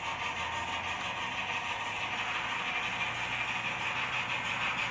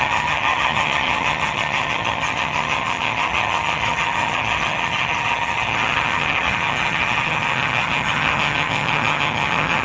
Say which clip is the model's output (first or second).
second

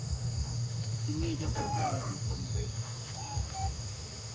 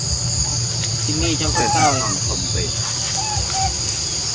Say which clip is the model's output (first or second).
first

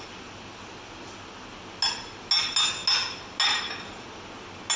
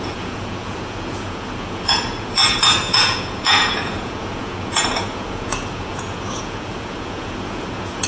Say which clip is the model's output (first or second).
second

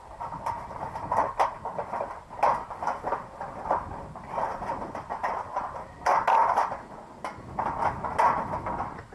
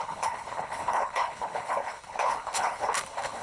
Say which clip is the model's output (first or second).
second